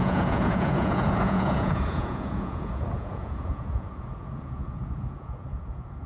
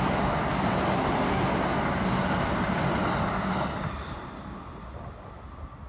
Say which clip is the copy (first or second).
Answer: first